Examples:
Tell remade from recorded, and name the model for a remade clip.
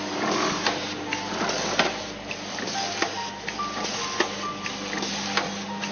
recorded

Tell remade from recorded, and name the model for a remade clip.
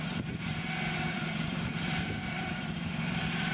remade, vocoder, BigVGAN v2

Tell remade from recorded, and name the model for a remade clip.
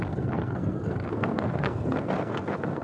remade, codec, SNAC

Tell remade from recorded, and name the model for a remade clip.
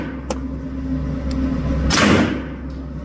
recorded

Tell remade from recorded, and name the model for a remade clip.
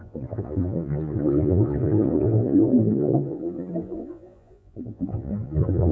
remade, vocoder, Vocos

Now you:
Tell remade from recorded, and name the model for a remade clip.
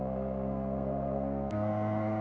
remade, codec, SNAC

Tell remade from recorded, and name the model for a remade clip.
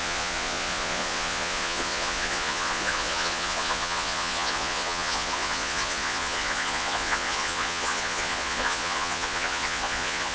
remade, vocoder, Vocos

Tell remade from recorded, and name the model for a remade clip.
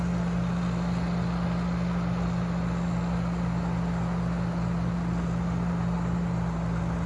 recorded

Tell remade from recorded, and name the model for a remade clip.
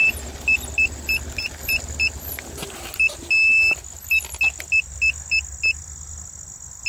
recorded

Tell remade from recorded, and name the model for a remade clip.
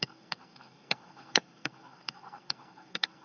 remade, codec, SNAC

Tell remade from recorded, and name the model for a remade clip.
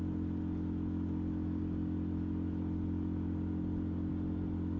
recorded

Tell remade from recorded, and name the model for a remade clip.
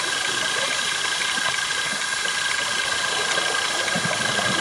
recorded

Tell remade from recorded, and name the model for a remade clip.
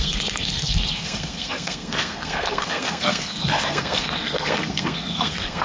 remade, codec, SNAC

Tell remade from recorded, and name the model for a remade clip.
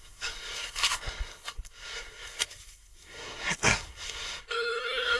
remade, codec, SNAC